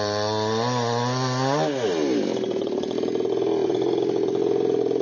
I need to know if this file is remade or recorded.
recorded